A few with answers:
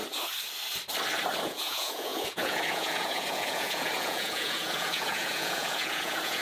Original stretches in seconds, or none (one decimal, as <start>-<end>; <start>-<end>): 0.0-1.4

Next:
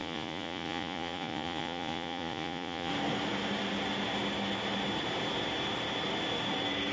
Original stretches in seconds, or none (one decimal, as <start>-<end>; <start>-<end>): 2.9-6.9

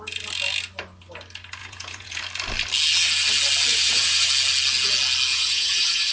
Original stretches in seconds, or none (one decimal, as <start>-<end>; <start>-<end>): 0.0-1.6; 2.2-3.7; 4.3-5.3

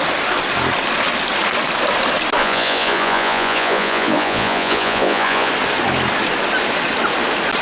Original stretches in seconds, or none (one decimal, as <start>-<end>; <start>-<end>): 0.0-2.4; 5.5-7.6

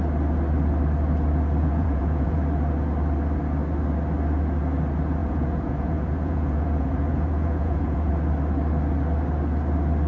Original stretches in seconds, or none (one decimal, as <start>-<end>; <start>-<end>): 0.0-1.6; 2.4-5.2; 8.1-10.1

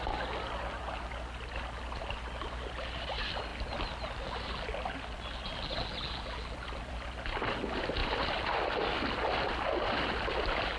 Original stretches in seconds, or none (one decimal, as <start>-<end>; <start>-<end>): 0.0-10.8

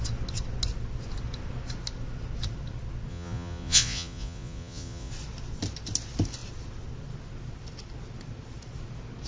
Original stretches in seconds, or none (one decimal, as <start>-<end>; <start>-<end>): 0.0-3.1; 5.1-9.3

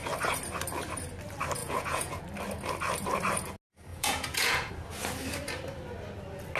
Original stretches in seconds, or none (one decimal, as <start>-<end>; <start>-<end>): 0.0-1.6; 2.2-3.9; 4.7-6.6